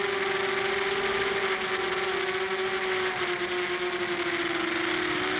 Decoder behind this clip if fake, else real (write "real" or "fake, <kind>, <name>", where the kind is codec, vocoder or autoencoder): real